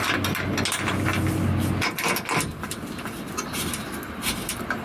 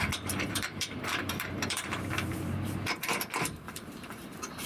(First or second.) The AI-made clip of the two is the second